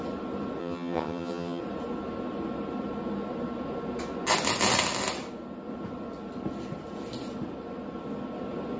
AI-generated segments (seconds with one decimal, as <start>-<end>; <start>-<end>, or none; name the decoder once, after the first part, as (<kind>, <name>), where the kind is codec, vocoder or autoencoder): 0.6-1.6 (vocoder, HiFi-GAN)